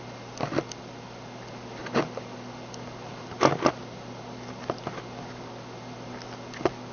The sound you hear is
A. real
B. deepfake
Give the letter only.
A